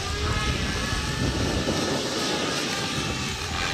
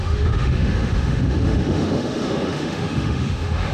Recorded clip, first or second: first